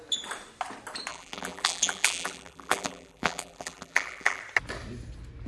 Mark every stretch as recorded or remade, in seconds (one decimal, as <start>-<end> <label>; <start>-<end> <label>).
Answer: 0.0-1.1 recorded; 1.1-4.4 remade; 4.4-5.5 recorded